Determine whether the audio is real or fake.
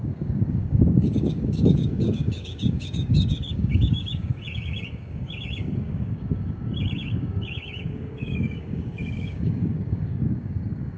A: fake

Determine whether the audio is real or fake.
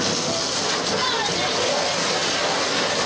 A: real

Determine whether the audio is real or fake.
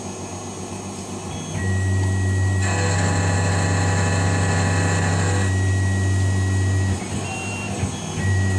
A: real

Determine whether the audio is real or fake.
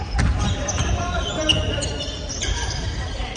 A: fake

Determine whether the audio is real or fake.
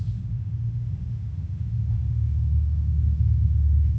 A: fake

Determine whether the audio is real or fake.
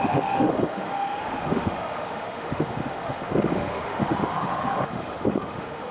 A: fake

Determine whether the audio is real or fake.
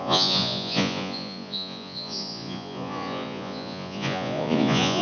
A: fake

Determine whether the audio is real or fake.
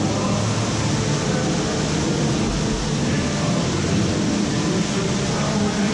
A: real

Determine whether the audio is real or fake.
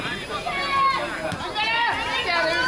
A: real